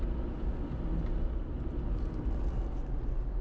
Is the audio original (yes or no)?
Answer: yes